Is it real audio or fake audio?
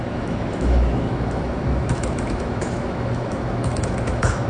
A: fake